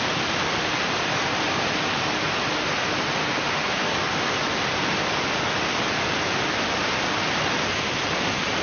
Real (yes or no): yes